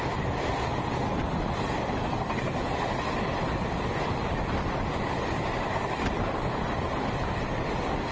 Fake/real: real